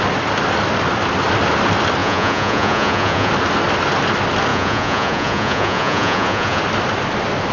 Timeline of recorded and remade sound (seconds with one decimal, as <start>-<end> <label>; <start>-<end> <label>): 0.0-2.0 recorded; 2.0-3.3 remade; 3.3-4.5 recorded; 4.5-6.6 remade; 6.6-7.5 recorded